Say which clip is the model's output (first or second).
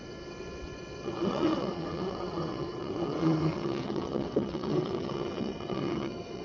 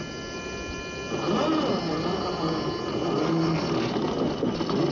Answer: first